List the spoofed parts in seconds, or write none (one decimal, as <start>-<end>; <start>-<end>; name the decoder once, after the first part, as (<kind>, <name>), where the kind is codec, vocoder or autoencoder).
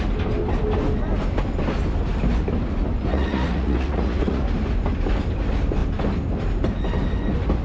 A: 3.1-4.4 (vocoder, Vocos)